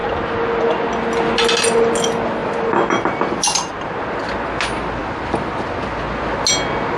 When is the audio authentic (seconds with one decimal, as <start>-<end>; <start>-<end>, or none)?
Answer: 0.0-2.4; 3.7-7.0